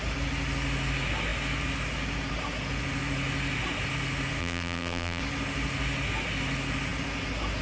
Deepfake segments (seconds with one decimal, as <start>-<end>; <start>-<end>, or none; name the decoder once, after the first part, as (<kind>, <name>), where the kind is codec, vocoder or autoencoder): 4.4-5.2 (vocoder, BigVGAN v2)